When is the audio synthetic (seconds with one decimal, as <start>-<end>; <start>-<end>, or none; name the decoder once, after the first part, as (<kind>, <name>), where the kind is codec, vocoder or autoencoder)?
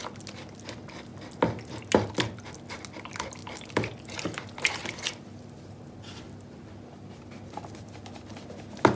none